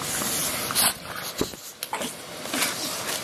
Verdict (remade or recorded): recorded